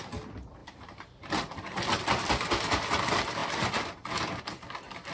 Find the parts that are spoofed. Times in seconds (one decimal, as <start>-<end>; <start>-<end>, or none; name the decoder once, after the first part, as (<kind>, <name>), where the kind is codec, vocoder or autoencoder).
0.6-2.0 (vocoder, BigVGAN v2)